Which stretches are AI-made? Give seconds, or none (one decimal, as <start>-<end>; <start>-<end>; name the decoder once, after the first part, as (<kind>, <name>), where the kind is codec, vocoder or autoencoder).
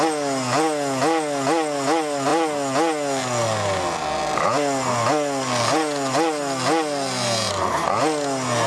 none